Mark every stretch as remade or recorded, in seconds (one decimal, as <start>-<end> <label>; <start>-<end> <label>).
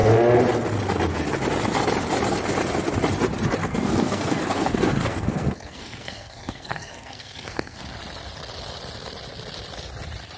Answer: 0.0-3.6 recorded; 3.6-7.8 remade; 7.8-10.4 recorded